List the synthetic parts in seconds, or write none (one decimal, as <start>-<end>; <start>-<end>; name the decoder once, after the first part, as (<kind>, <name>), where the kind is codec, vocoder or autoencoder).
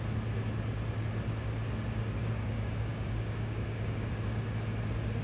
2.2-4.1 (codec, DAC)